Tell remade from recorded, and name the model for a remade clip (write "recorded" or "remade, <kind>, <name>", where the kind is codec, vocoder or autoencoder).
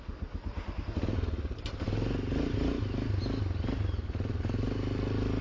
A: recorded